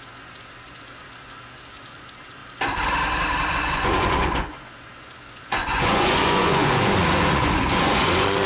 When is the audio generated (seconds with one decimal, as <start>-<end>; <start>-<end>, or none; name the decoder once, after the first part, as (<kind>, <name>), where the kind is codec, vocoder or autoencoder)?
0.0-2.4 (vocoder, Vocos); 3.5-8.5